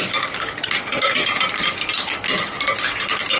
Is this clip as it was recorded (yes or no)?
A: no